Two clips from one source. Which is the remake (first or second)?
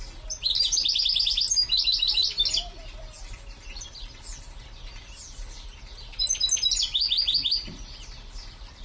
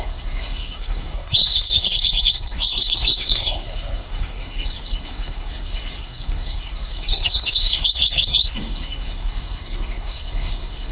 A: second